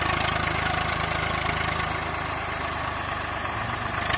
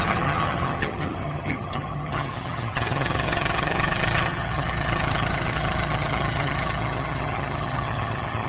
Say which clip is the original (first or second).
first